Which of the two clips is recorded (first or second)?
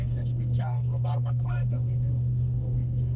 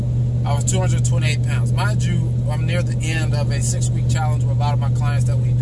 second